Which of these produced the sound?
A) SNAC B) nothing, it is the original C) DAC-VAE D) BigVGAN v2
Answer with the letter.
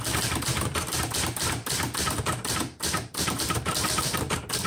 D